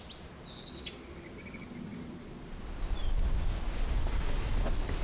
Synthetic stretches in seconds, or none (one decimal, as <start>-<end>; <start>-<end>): none